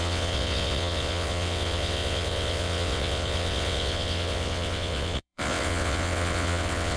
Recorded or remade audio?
remade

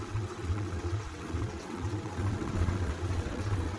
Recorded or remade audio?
remade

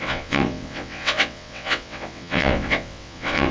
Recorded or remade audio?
remade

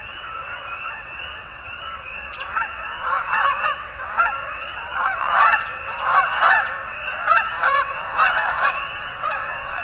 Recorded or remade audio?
remade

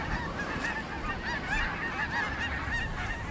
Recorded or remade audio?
recorded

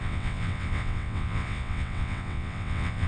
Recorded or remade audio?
remade